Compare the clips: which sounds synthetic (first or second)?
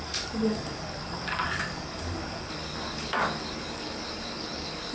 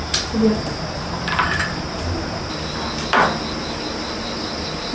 first